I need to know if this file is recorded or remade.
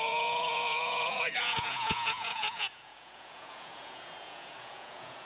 remade